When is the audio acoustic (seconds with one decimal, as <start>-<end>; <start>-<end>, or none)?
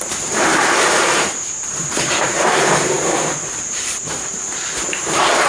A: 4.3-5.0